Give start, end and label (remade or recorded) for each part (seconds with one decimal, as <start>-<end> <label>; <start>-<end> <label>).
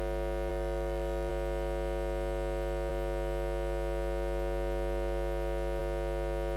0.0-0.5 recorded; 0.5-1.3 remade; 1.3-6.6 recorded